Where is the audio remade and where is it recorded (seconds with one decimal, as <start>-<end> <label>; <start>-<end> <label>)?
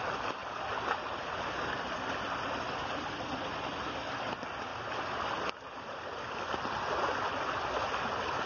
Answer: 0.0-0.4 recorded; 0.4-1.7 remade; 1.7-4.7 recorded; 4.7-6.4 remade; 6.4-8.5 recorded